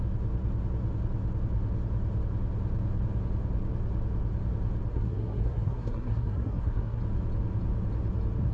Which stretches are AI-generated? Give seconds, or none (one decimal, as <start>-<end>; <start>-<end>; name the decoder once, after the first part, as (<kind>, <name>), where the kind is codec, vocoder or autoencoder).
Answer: 4.9-7.0 (codec, SNAC)